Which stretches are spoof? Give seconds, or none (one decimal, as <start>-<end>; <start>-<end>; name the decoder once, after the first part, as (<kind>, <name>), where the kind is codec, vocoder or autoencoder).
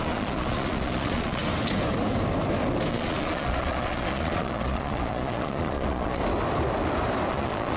0.0-1.4 (vocoder, Vocos); 2.9-6.2; 7.3-7.8